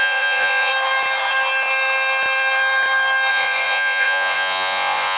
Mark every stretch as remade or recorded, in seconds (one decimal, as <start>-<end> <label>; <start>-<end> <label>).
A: 0.0-0.7 remade; 0.7-3.3 recorded; 3.3-5.2 remade